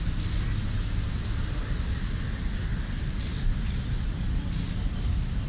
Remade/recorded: recorded